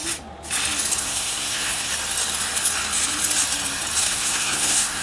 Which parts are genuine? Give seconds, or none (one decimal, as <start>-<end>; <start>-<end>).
0.0-1.0; 1.9-4.0